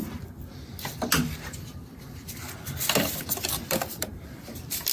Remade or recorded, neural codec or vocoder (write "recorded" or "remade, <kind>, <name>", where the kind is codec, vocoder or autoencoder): remade, vocoder, BigVGAN v2